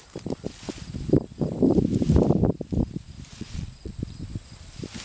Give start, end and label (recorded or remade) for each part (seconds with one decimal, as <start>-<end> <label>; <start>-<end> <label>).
0.0-3.3 recorded; 3.3-3.9 remade; 3.9-5.0 recorded